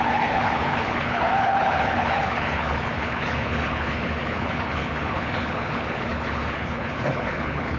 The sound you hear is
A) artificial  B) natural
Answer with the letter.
A